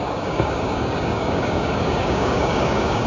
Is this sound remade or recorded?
remade